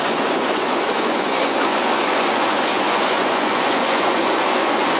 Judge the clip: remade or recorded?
remade